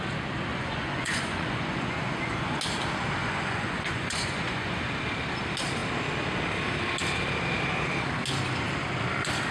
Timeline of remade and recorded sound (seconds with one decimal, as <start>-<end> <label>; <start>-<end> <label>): 0.0-0.5 recorded; 0.5-2.6 remade; 2.6-3.2 recorded; 3.2-4.8 remade; 4.8-9.5 recorded